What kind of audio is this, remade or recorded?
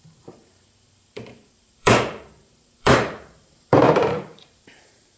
remade